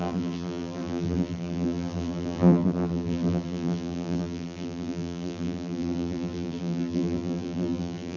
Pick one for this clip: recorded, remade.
remade